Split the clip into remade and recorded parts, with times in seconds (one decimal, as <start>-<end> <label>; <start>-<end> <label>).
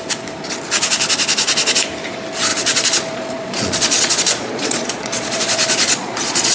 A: 0.0-2.5 recorded; 2.5-6.5 remade